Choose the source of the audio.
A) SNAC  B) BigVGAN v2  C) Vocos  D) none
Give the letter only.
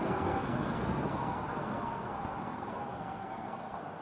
A